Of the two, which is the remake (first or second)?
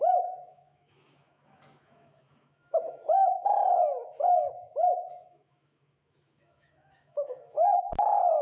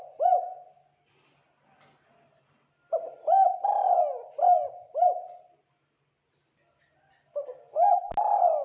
first